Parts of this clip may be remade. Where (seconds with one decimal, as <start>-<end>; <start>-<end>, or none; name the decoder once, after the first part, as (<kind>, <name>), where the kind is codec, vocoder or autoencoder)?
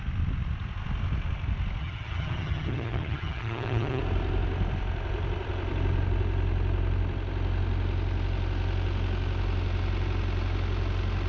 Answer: 1.8-4.0 (vocoder, HiFi-GAN)